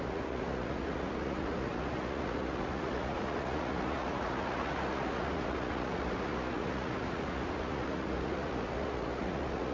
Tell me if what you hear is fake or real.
fake